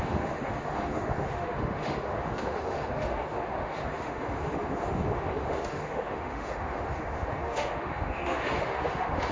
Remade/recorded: remade